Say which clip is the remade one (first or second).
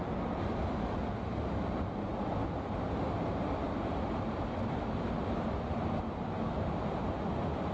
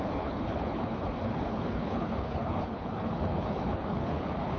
second